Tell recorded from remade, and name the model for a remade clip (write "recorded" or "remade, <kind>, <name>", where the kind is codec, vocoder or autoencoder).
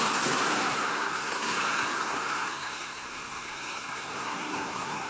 remade, codec, SNAC